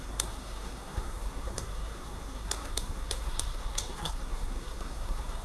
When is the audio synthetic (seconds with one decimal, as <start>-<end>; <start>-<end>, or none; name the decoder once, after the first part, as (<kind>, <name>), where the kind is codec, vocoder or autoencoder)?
0.0-5.4 (codec, SNAC)